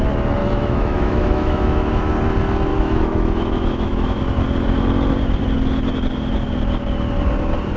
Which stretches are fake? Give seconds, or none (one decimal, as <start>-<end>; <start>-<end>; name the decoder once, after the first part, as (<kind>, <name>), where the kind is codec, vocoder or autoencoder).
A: 0.4-2.1 (autoencoder, DAC-VAE); 2.7-4.2